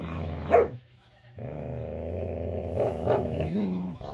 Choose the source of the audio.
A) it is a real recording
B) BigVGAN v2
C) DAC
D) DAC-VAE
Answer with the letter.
D